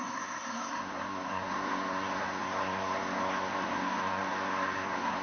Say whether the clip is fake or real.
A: fake